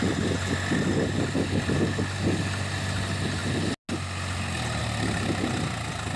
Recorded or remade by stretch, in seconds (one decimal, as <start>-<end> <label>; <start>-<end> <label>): 0.0-6.2 recorded